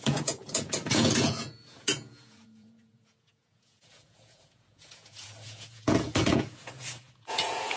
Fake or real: fake